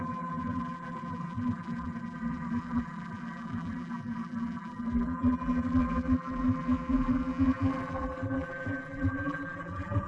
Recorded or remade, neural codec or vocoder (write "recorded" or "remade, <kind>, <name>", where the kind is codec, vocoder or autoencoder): remade, vocoder, BigVGAN v2